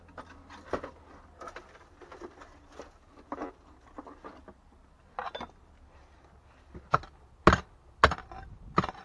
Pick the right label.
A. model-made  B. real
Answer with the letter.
B